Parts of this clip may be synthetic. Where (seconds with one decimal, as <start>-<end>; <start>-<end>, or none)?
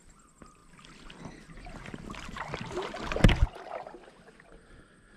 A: none